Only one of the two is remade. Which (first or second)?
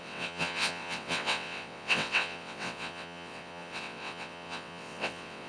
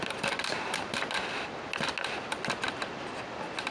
first